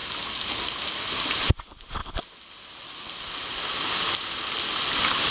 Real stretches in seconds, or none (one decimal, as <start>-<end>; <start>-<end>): 0.0-5.3